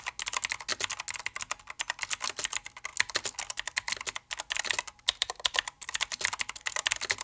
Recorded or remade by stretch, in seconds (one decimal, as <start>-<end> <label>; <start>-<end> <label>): 0.0-7.2 recorded